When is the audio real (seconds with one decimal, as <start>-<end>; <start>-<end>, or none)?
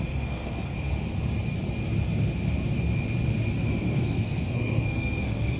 0.9-3.8